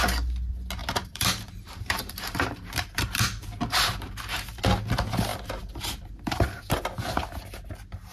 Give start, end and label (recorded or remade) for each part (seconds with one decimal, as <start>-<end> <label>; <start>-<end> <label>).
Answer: 0.0-0.8 recorded; 0.8-4.6 remade; 4.6-5.3 recorded; 5.3-6.8 remade; 6.8-8.1 recorded